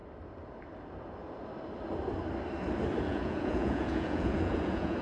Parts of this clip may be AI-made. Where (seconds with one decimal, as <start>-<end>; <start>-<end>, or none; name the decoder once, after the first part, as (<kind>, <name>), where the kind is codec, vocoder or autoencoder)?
3.0-5.0 (vocoder, Vocos)